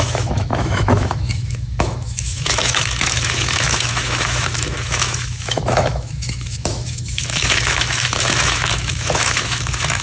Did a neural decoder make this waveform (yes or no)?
yes